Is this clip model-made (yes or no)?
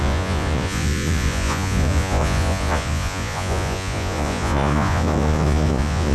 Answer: yes